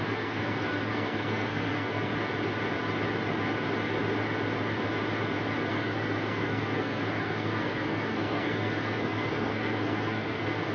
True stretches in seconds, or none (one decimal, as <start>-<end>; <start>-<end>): 2.1-5.7